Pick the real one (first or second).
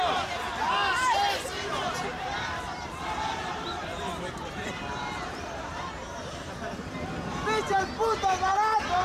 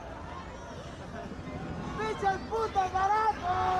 second